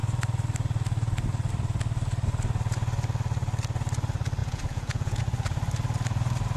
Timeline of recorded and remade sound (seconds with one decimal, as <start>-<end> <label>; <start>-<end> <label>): 0.0-4.4 recorded; 4.4-5.2 remade; 5.2-6.6 recorded